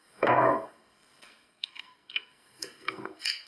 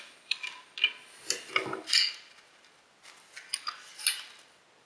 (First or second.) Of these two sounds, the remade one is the first